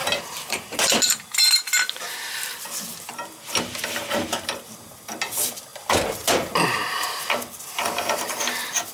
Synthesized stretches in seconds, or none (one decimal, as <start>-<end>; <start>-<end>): 0.0-0.8; 5.7-7.2